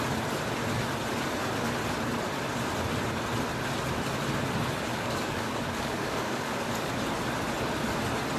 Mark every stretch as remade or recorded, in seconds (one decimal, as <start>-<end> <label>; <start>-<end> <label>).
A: 0.0-4.9 recorded; 4.9-6.9 remade; 6.9-8.4 recorded